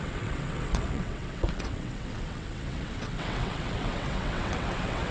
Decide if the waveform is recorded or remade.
remade